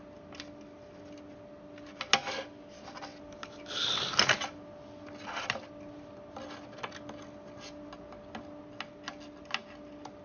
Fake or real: real